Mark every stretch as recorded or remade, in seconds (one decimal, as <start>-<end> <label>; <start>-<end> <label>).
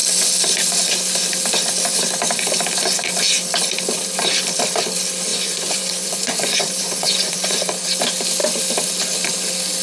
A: 0.0-5.3 recorded; 5.3-7.6 remade; 7.6-9.8 recorded